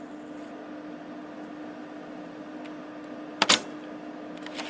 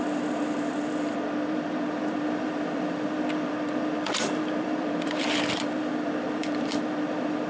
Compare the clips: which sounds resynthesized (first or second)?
second